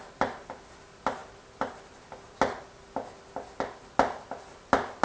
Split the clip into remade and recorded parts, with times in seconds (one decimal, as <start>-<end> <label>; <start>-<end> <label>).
0.0-5.0 recorded